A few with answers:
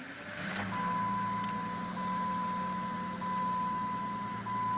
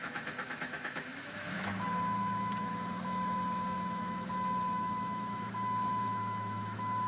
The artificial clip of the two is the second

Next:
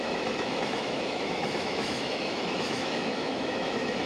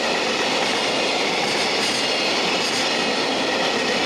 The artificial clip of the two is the first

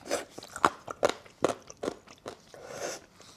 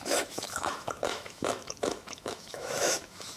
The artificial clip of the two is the second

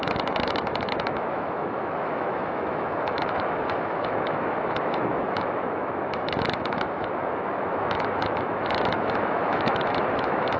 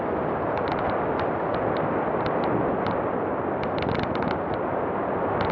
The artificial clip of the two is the first